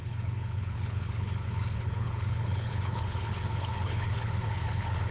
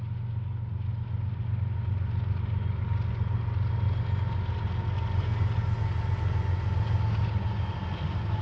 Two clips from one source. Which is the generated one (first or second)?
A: first